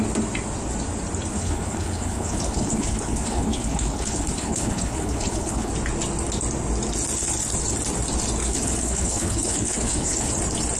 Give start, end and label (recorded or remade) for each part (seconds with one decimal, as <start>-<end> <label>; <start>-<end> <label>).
0.0-1.3 recorded; 1.3-5.7 remade; 5.7-8.4 recorded; 8.4-10.3 remade; 10.3-10.8 recorded